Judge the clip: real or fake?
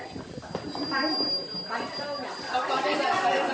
real